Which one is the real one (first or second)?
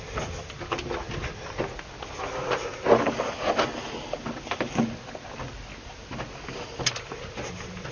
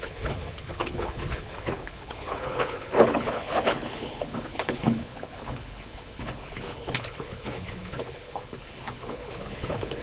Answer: first